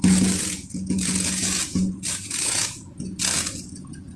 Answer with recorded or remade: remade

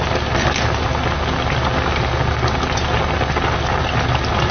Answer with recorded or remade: recorded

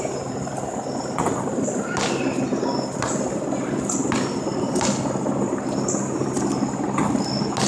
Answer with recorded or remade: recorded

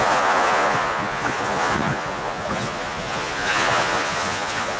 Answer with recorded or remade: remade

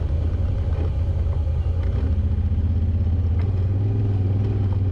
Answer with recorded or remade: recorded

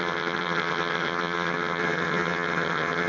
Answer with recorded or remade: remade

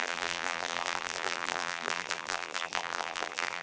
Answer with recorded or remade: remade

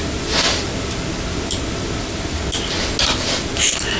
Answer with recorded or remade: recorded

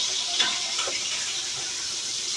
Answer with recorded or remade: remade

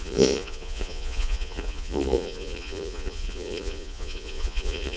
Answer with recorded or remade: remade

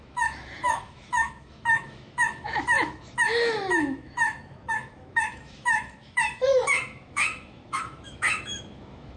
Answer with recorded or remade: remade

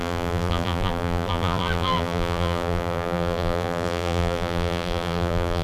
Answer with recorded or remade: remade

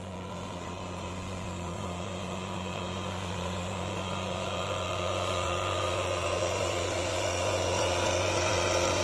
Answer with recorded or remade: remade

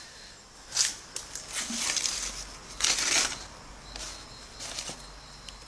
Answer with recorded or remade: recorded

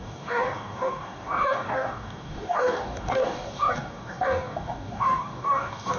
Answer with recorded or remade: remade